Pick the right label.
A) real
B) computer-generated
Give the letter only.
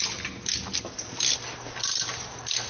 A